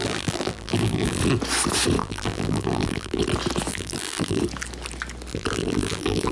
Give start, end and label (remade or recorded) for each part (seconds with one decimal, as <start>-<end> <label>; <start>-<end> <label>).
0.0-1.2 remade; 1.2-2.0 recorded; 2.0-3.2 remade; 3.2-3.7 recorded; 3.7-4.4 remade; 4.4-5.3 recorded; 5.3-6.3 remade